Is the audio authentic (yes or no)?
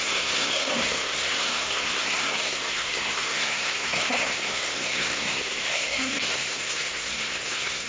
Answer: no